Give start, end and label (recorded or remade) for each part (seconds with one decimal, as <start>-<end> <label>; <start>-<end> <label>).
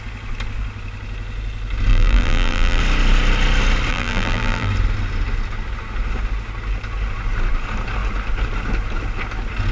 0.0-1.9 recorded; 1.9-2.8 remade; 2.8-3.9 recorded; 3.9-4.7 remade; 4.7-9.7 recorded